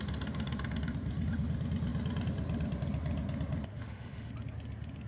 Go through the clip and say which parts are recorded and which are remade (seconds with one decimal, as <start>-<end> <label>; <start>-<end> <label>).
0.0-3.7 recorded; 3.7-4.3 remade; 4.3-5.1 recorded